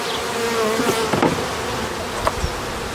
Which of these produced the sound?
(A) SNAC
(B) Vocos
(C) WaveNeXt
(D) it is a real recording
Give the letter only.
D